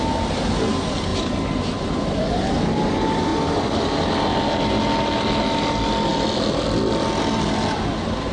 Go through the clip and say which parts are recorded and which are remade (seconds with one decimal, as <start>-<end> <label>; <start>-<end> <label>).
0.0-8.3 recorded